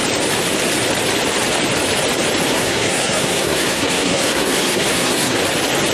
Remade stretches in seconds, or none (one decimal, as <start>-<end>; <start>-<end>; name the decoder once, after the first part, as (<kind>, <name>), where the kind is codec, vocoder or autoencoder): 2.5-5.4 (codec, SNAC)